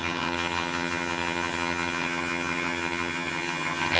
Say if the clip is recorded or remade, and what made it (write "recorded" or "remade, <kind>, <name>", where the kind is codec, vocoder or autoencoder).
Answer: remade, vocoder, HiFi-GAN